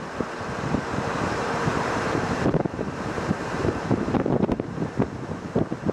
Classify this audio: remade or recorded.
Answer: remade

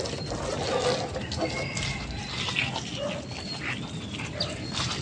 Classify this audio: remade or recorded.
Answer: recorded